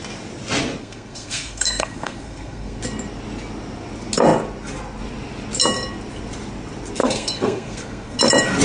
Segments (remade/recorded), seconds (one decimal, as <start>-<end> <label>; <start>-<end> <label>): 0.0-0.8 recorded; 0.8-2.8 remade; 2.8-7.0 recorded; 7.0-8.2 remade; 8.2-8.6 recorded